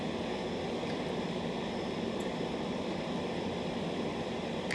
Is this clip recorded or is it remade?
recorded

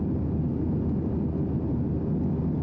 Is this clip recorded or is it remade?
recorded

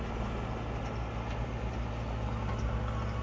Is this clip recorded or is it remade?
recorded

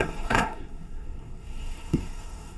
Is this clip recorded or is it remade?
remade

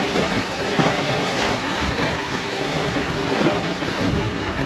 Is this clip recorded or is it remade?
remade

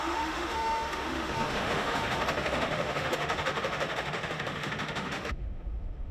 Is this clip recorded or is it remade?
remade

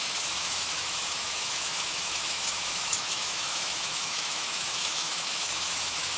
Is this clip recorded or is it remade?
remade